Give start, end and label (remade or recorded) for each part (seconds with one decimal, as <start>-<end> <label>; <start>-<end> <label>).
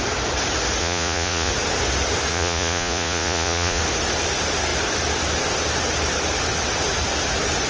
0.0-0.8 recorded; 0.8-1.5 remade; 1.5-2.3 recorded; 2.3-3.8 remade; 3.8-7.7 recorded